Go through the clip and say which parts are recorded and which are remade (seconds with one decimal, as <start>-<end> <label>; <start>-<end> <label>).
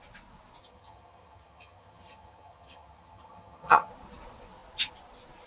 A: 0.0-0.6 recorded; 0.6-3.9 remade; 3.9-5.5 recorded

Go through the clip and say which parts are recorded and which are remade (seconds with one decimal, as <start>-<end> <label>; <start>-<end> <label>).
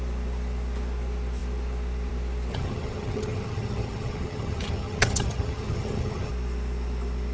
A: 0.0-2.5 recorded; 2.5-6.3 remade; 6.3-7.3 recorded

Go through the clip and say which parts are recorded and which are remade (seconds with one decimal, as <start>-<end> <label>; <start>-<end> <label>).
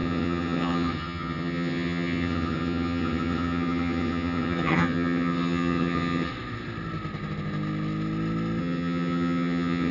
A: 0.0-6.3 remade; 6.3-8.6 recorded; 8.6-9.9 remade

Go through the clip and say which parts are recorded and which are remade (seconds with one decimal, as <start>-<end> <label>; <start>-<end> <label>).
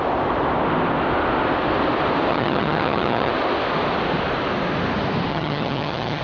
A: 0.0-2.3 recorded; 2.3-3.3 remade; 3.3-5.3 recorded; 5.3-6.2 remade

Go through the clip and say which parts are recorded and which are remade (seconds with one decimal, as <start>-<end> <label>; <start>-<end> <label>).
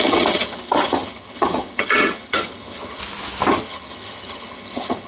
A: 0.0-3.0 remade; 3.0-3.5 recorded; 3.5-5.1 remade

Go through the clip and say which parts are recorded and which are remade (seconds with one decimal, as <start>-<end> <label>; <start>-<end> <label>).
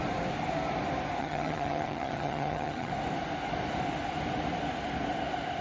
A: 0.0-1.2 recorded; 1.2-2.9 remade; 2.9-5.6 recorded